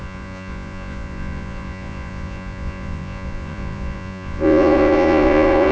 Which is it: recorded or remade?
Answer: remade